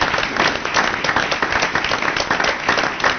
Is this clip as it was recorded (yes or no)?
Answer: yes